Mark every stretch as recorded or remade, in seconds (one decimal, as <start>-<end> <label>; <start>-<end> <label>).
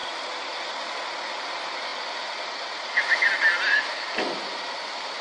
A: 0.0-0.6 recorded; 0.6-5.2 remade